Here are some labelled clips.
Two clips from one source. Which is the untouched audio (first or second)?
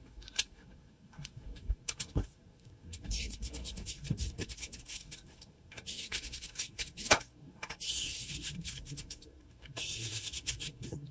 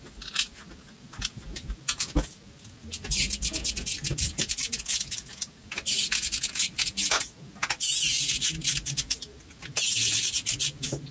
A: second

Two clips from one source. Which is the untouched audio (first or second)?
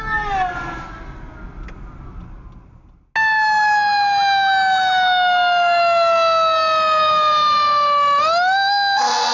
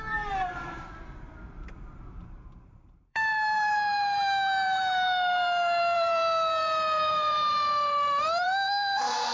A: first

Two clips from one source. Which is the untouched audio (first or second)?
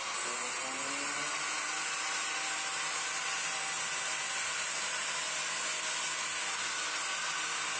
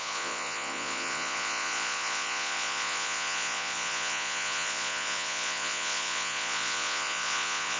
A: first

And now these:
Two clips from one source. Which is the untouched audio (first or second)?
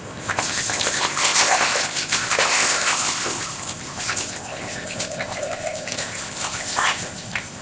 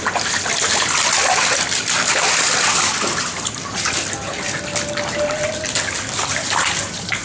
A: second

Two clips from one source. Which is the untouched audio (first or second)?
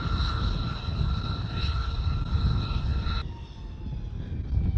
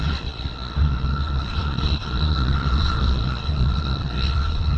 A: first